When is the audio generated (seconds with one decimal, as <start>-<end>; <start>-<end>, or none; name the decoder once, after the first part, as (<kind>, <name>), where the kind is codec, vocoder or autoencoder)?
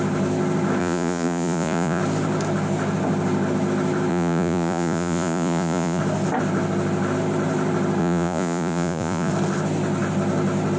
0.8-2.0 (vocoder, Vocos); 4.1-6.0; 8.0-9.3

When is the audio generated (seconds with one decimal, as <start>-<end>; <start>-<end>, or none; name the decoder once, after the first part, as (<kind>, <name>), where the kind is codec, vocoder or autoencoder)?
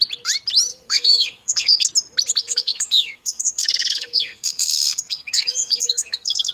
0.7-1.9 (codec, SNAC); 2.4-6.5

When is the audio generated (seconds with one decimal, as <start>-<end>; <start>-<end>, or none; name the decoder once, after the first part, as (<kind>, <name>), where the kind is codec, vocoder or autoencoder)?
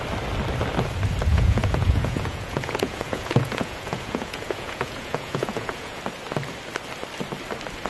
1.3-6.0 (vocoder, Vocos)